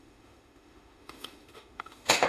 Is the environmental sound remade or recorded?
remade